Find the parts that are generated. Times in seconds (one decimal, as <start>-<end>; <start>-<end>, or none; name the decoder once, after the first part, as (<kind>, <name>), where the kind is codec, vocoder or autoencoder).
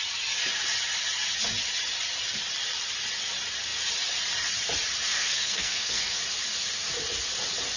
5.1-6.2 (codec, SNAC)